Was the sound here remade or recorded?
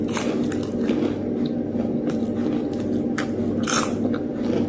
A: recorded